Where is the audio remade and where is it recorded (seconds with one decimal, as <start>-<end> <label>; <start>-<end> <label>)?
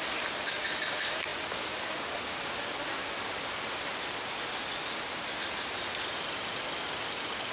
0.0-7.5 recorded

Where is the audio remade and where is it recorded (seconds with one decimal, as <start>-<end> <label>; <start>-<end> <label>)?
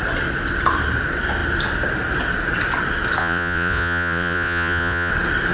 0.0-3.2 recorded; 3.2-5.1 remade; 5.1-5.5 recorded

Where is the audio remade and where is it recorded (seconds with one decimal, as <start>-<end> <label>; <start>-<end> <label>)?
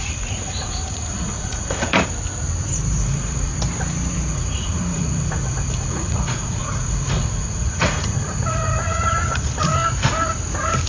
0.0-1.9 remade; 1.9-3.0 recorded; 3.0-3.5 remade; 3.5-4.3 recorded; 4.3-9.7 remade; 9.7-10.9 recorded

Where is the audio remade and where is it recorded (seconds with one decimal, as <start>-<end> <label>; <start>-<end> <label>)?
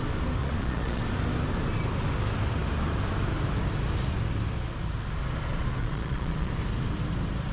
0.0-0.4 recorded; 0.4-1.0 remade; 1.0-5.8 recorded; 5.8-6.5 remade; 6.5-7.5 recorded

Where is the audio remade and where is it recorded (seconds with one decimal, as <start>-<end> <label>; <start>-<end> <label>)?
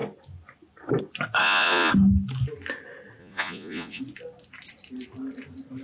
0.0-1.4 recorded; 1.4-1.9 remade; 1.9-3.2 recorded; 3.2-4.0 remade; 4.0-5.8 recorded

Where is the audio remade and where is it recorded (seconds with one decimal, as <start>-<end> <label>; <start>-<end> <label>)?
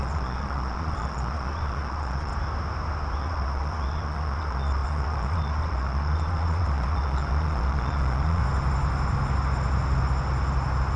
0.0-2.3 remade; 2.3-3.2 recorded; 3.2-8.4 remade; 8.4-11.0 recorded